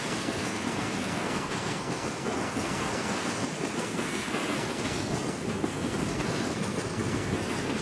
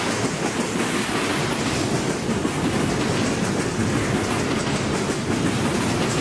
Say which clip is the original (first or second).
second